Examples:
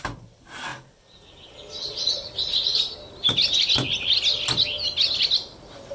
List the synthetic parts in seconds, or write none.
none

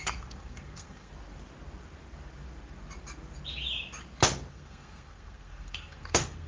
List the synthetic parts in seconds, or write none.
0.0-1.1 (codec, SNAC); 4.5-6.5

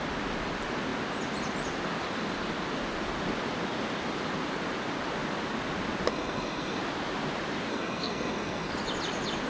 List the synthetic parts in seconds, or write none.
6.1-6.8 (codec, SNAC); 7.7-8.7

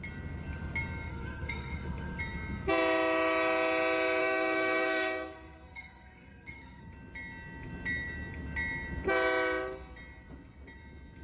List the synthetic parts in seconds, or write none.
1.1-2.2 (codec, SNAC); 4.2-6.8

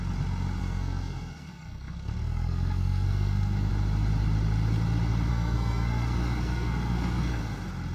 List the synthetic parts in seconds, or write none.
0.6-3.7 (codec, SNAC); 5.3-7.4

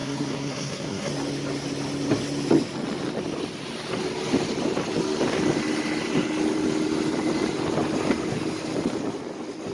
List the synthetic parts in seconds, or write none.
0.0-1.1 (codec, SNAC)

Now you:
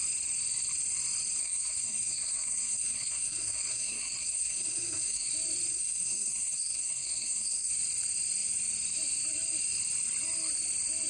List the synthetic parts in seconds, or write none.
1.4-5.3 (codec, SNAC); 5.7-7.7